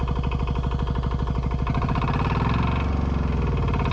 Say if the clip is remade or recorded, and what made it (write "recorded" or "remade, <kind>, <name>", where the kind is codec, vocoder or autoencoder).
recorded